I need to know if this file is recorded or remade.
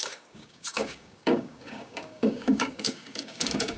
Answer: remade